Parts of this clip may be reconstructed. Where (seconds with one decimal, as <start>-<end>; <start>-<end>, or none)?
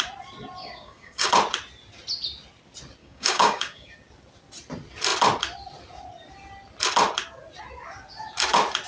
0.6-1.3; 3.0-3.9